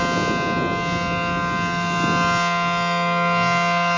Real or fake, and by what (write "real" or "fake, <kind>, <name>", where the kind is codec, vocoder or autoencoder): real